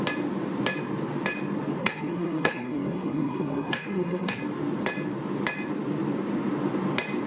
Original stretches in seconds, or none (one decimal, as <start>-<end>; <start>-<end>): 0.0-1.8; 4.4-7.3